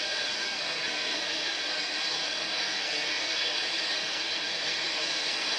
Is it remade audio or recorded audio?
remade